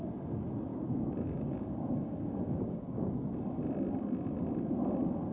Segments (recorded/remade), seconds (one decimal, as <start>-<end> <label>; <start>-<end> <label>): 0.0-0.7 recorded; 0.7-3.3 remade; 3.3-5.3 recorded